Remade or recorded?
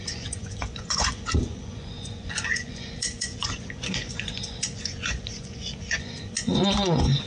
remade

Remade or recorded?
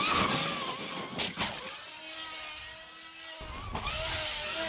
recorded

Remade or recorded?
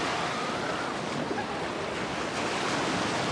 recorded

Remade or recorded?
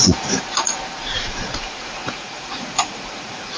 remade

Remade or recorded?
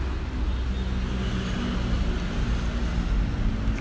recorded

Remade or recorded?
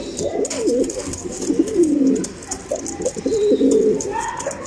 recorded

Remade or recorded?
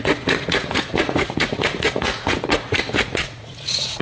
remade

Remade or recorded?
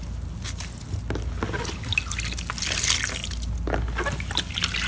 recorded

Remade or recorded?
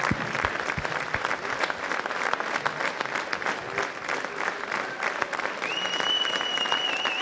recorded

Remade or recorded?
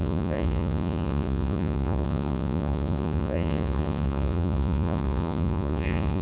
remade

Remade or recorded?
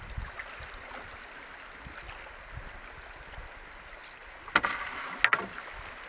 recorded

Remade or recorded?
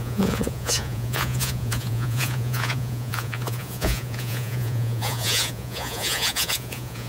remade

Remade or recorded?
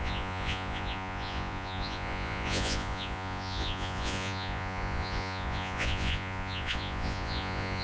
remade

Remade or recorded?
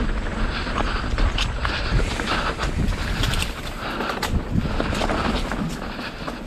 recorded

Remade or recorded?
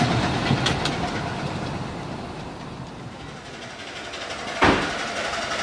recorded